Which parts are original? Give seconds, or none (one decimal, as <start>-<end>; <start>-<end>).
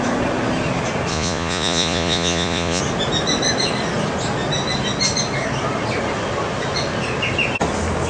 0.0-1.1; 2.8-8.1